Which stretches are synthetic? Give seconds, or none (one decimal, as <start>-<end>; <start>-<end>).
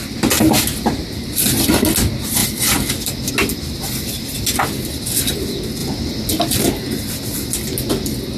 none